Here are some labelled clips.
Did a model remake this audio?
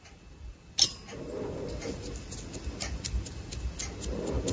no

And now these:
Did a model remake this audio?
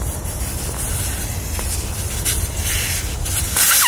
no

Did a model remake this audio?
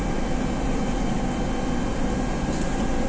no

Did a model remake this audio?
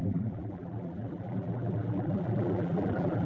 yes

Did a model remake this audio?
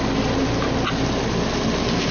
no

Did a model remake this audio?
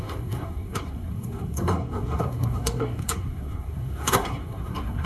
yes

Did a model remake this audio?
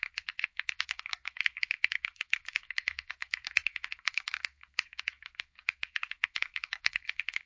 yes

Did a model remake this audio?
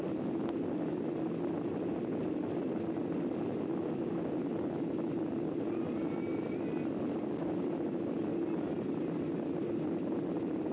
no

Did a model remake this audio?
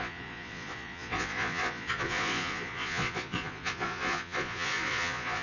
yes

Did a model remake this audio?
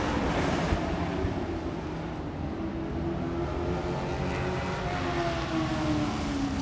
no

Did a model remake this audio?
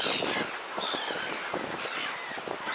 no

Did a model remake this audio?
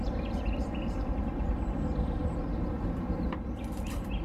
yes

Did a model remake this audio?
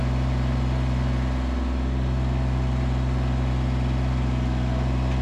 no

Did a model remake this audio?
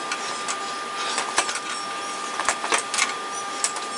no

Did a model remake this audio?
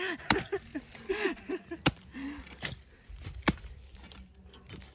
no